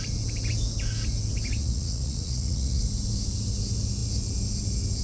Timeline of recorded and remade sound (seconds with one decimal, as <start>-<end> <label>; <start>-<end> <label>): 0.0-1.6 recorded; 1.6-2.8 remade; 2.8-5.0 recorded